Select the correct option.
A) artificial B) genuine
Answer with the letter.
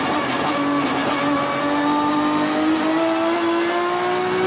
B